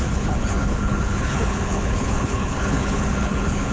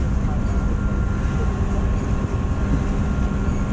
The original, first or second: second